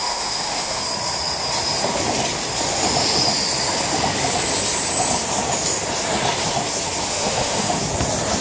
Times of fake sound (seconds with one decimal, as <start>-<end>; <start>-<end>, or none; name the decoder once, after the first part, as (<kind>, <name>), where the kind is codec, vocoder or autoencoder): 0.0-0.8 (autoencoder, DAC-VAE); 7.1-7.8